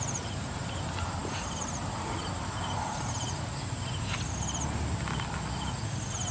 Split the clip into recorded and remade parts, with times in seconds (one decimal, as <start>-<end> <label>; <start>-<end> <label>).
0.0-6.3 recorded